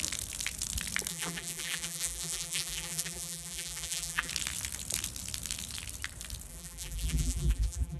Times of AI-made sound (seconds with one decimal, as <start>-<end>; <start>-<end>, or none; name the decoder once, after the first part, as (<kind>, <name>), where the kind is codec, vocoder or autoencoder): 1.1-4.3 (vocoder, BigVGAN v2); 6.5-8.0